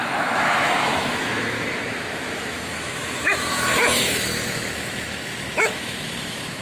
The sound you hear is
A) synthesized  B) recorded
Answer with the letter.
A